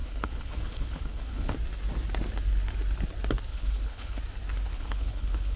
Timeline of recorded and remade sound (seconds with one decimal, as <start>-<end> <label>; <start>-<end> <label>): 0.0-1.5 remade; 1.5-3.5 recorded; 3.5-4.2 remade; 4.2-4.7 recorded; 4.7-5.6 remade